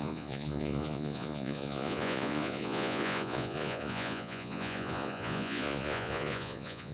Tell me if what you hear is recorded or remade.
remade